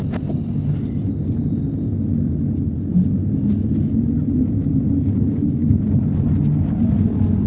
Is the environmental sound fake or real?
real